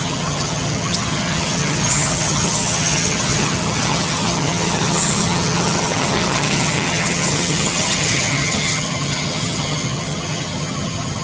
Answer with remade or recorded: remade